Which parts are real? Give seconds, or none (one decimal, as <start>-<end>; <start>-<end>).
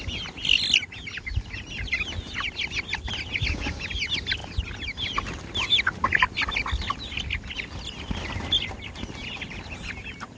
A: 0.0-10.4